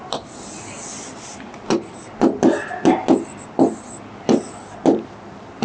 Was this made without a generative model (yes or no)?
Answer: yes